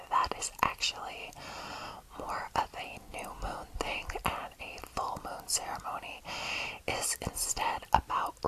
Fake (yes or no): no